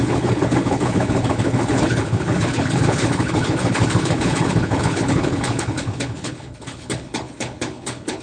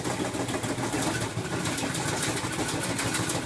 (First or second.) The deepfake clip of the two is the first